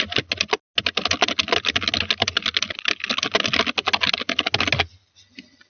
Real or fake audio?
real